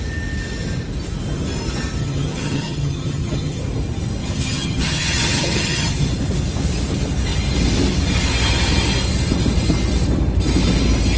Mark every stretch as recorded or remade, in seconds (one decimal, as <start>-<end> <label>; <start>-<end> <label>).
0.0-2.0 recorded; 2.0-3.6 remade; 3.6-4.2 recorded; 4.2-5.9 remade; 5.9-11.2 recorded